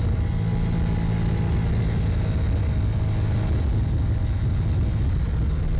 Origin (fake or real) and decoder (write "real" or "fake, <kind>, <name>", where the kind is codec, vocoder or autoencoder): real